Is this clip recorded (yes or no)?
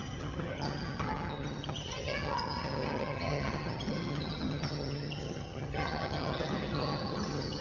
no